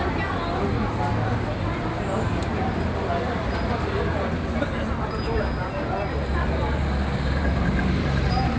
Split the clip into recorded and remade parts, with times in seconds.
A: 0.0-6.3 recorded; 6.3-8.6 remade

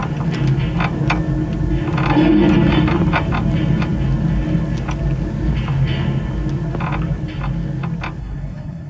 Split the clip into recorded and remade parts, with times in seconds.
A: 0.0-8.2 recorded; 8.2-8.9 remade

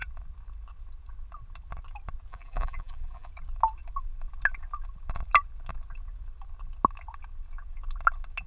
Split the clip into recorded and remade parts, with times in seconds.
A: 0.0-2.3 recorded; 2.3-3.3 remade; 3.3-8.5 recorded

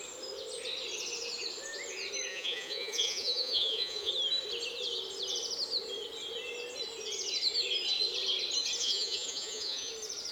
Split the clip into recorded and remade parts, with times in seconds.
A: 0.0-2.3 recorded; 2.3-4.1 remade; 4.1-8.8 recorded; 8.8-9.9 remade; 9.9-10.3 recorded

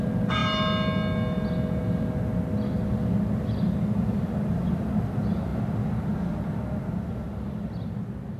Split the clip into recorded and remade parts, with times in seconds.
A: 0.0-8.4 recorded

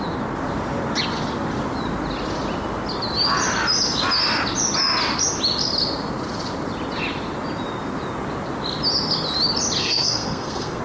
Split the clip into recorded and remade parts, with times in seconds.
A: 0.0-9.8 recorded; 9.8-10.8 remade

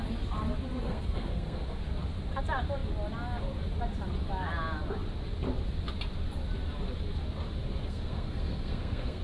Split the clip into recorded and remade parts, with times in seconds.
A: 0.0-0.8 recorded; 0.8-1.8 remade; 1.8-7.8 recorded; 7.8-9.2 remade

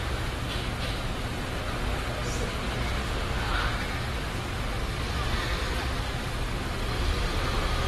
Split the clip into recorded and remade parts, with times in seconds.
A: 0.0-3.0 recorded; 3.0-3.7 remade; 3.7-7.9 recorded